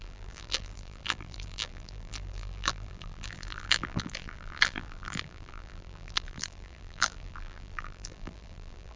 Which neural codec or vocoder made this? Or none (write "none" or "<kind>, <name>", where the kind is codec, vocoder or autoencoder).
vocoder, BigVGAN v2